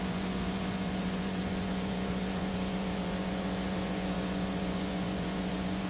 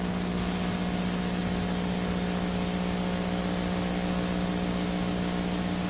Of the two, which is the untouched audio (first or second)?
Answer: second